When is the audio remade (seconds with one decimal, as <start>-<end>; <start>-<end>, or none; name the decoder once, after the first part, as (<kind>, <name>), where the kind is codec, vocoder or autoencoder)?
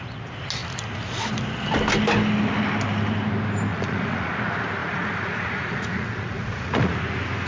3.7-4.3 (vocoder, Vocos); 4.8-6.9